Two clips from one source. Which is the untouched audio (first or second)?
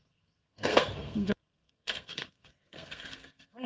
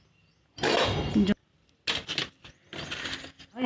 second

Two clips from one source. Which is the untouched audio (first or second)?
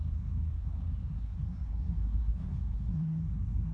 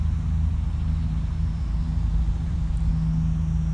second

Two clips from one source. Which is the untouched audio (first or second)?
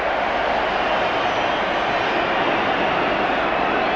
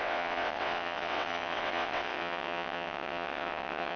first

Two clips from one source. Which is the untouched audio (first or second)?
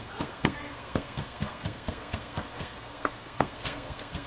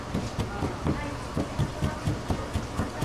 second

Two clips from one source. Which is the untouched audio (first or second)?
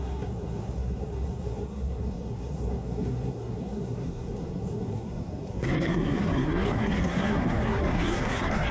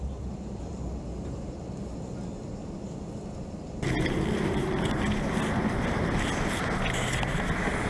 second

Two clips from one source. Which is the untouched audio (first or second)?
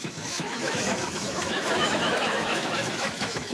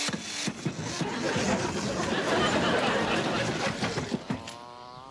second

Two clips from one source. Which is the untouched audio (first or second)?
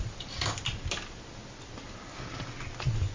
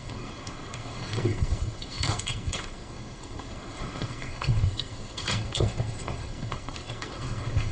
first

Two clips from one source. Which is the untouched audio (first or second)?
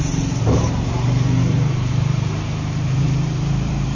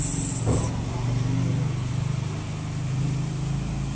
second